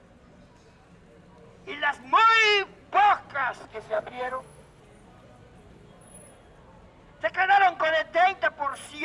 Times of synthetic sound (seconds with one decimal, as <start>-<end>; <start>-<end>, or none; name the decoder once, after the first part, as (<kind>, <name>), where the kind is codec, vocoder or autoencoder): 3.7-4.8 (autoencoder, DAC-VAE)